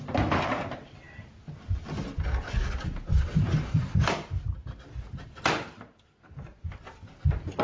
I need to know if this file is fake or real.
real